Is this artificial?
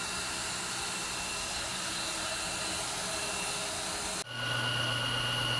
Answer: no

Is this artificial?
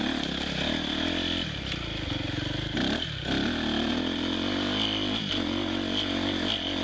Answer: no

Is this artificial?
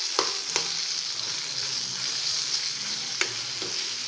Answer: no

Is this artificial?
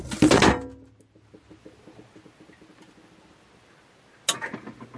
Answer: no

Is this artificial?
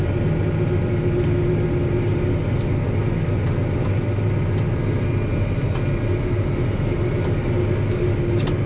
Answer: no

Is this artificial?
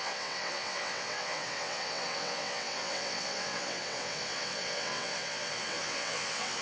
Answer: yes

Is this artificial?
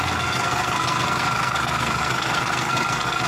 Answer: yes